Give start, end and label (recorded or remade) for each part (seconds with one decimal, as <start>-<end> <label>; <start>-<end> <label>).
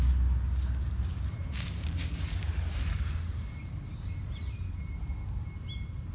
0.0-1.4 recorded; 1.4-5.1 remade; 5.1-6.1 recorded